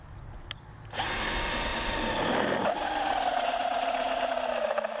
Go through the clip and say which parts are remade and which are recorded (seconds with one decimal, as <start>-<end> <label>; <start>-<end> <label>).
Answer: 0.0-1.7 recorded; 1.7-4.3 remade; 4.3-5.0 recorded